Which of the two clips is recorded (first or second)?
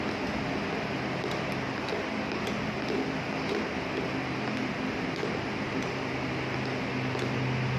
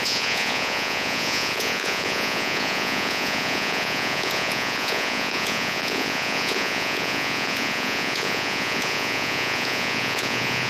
first